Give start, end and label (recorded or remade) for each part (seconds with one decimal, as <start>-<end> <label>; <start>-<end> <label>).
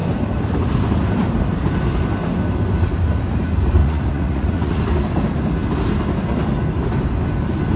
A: 0.0-3.8 recorded; 3.8-4.8 remade; 4.8-7.8 recorded